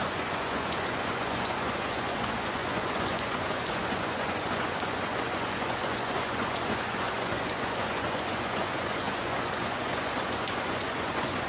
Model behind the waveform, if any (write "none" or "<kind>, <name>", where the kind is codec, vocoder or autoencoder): vocoder, Vocos